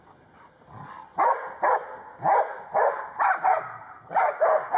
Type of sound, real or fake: real